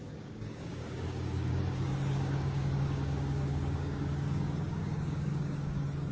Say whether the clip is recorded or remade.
remade